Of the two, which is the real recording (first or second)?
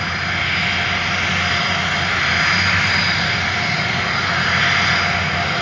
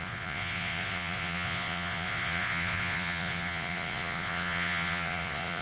first